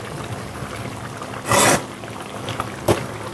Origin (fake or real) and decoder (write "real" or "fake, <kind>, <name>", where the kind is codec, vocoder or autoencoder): real